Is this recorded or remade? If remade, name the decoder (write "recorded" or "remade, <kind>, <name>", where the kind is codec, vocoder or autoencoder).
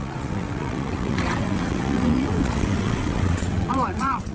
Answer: remade, vocoder, WaveNeXt